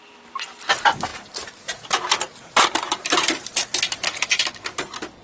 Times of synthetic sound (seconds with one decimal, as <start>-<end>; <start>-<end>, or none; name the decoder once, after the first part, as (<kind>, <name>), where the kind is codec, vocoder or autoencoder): 1.1-4.2 (vocoder, BigVGAN v2)